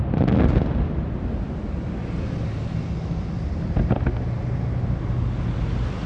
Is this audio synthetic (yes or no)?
no